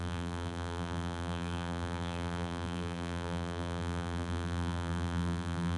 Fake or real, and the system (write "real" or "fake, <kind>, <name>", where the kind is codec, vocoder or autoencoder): fake, vocoder, BigVGAN v2